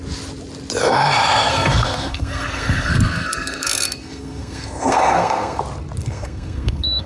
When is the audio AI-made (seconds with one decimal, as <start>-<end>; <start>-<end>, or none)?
1.5-5.6; 6.0-7.1